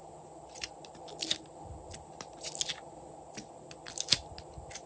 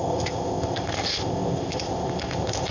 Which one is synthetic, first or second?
second